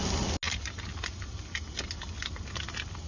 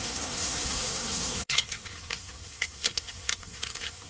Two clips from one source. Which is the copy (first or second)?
second